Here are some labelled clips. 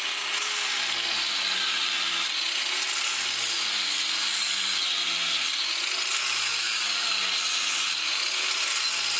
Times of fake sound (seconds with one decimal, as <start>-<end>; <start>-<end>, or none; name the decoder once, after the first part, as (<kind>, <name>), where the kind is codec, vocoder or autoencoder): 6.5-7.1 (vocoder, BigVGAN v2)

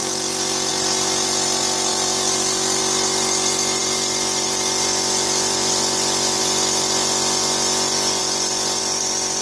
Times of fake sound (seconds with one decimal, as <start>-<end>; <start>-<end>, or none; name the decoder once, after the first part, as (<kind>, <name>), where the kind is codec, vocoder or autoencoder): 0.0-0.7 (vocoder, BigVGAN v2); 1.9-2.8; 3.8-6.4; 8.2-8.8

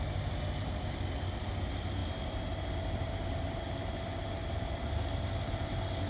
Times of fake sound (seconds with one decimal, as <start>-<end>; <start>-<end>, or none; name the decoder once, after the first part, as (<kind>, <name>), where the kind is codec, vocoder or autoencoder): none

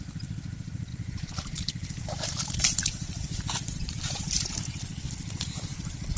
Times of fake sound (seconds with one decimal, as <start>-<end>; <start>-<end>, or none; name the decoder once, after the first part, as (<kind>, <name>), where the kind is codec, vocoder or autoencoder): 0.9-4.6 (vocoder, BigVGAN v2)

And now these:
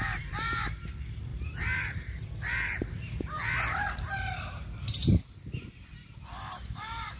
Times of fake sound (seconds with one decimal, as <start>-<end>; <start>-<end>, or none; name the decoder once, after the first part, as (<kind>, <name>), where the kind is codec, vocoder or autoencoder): 0.0-5.0 (vocoder, BigVGAN v2); 5.9-7.2

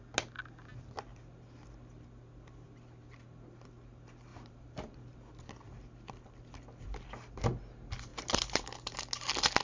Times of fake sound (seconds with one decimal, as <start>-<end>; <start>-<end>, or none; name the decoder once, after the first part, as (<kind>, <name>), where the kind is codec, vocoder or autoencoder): 4.3-5.3 (vocoder, BigVGAN v2); 8.1-8.7

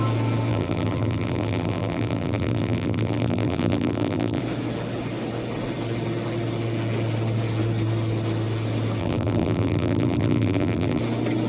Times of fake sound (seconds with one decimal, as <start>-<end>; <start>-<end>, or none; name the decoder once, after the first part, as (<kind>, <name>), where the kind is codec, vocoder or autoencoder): 0.5-4.4 (vocoder, BigVGAN v2); 9.0-11.0

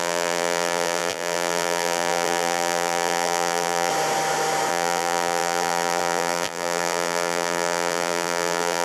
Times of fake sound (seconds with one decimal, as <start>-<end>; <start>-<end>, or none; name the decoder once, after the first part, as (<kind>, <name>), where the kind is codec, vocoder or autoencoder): 0.0-3.9 (vocoder, BigVGAN v2); 4.7-8.8